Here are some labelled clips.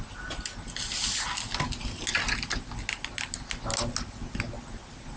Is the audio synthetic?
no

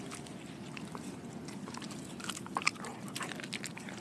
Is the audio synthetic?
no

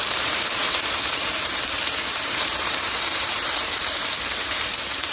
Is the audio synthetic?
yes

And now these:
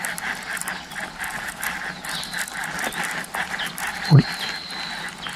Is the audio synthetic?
no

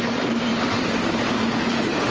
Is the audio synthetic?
yes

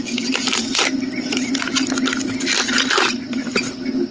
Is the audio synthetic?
no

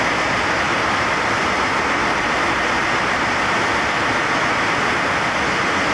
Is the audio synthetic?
no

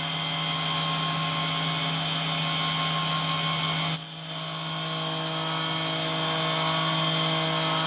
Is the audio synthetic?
no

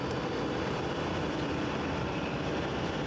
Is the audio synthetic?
no